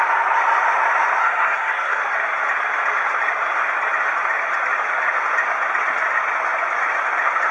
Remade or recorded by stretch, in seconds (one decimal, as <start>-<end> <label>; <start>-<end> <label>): 0.0-1.2 recorded; 1.2-2.0 remade; 2.0-7.5 recorded

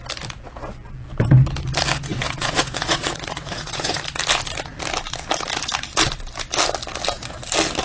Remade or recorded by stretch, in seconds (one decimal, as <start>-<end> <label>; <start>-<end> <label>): 0.0-2.1 recorded; 2.1-4.0 remade; 4.0-7.8 recorded

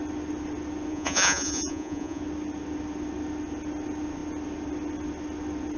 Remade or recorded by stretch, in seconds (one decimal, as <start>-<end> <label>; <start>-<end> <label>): 0.0-0.9 recorded; 0.9-2.2 remade; 2.2-5.8 recorded

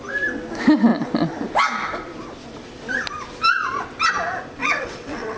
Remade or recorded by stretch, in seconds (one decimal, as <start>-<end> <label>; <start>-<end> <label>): 0.0-4.6 recorded; 4.6-5.4 remade

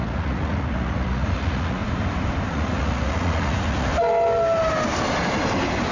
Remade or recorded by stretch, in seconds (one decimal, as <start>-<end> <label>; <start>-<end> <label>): 0.0-1.8 remade; 1.8-2.5 recorded; 2.5-3.9 remade; 3.9-5.9 recorded

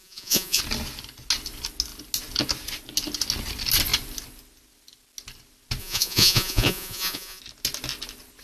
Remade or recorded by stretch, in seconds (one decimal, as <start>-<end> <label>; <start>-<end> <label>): 0.0-0.6 remade; 0.6-5.8 recorded; 5.8-7.4 remade; 7.4-8.4 recorded

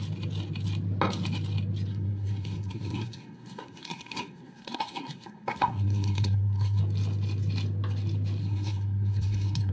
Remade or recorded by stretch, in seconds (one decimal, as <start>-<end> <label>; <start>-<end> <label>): 0.0-1.9 recorded; 1.9-6.8 remade; 6.8-8.4 recorded; 8.4-9.7 remade